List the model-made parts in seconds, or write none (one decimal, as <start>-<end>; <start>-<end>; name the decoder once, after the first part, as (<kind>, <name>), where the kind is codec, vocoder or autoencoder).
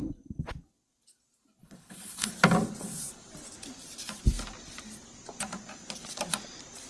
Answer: 1.6-2.3 (codec, HILCodec)